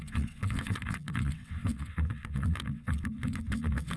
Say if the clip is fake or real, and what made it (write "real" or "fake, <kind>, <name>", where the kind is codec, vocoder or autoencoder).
fake, vocoder, WaveNeXt